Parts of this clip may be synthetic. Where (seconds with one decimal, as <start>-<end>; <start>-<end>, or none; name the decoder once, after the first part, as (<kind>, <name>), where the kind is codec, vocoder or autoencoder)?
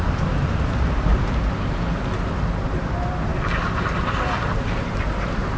0.0-1.1 (vocoder, BigVGAN v2); 2.3-5.6